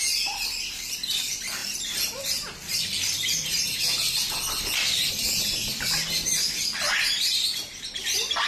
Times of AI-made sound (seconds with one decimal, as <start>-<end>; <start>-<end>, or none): 1.6-2.1; 2.7-3.8